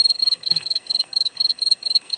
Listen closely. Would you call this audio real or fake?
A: fake